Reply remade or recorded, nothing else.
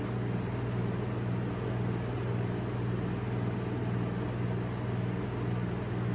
recorded